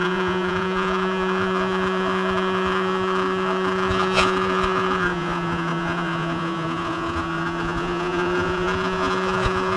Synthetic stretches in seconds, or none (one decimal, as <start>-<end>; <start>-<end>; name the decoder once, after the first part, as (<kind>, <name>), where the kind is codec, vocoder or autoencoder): 0.0-9.8 (vocoder, Vocos)

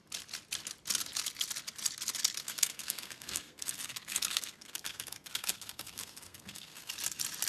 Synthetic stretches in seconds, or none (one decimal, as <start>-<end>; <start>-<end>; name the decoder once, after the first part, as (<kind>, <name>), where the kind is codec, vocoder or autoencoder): 2.4-6.9 (codec, SNAC)

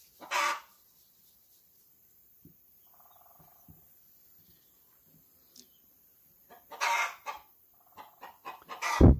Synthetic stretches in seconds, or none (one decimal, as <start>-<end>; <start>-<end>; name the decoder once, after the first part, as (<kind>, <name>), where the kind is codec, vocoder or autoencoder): none

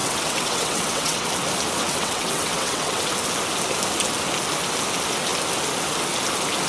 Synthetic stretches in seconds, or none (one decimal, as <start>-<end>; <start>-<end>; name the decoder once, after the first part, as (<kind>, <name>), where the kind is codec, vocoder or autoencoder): 0.0-1.3 (vocoder, WaveNeXt); 1.8-3.1

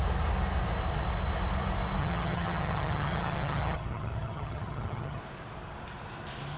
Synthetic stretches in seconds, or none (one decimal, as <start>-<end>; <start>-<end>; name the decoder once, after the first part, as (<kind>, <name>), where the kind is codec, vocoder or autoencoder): 2.0-5.2 (vocoder, HiFi-GAN)